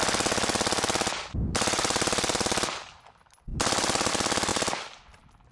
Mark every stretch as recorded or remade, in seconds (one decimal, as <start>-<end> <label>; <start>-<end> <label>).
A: 0.0-5.5 recorded